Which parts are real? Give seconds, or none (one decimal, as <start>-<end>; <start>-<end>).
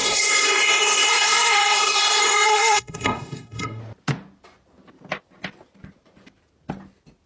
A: 3.8-7.3